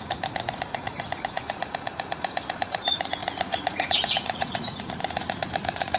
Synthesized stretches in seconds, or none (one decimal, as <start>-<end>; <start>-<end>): 0.0-6.0